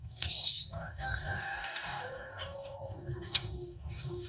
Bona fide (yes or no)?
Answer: no